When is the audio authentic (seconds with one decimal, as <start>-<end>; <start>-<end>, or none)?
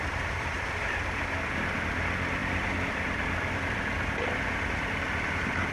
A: 0.0-5.7